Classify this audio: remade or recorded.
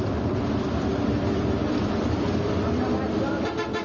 remade